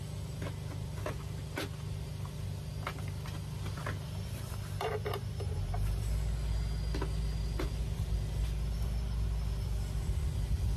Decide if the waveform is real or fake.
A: real